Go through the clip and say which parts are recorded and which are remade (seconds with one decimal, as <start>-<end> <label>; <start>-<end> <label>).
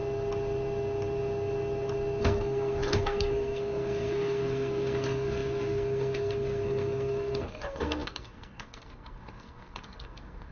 0.0-2.2 recorded; 2.2-10.5 remade